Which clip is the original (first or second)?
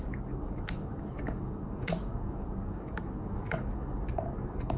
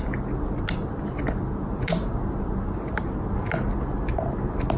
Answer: second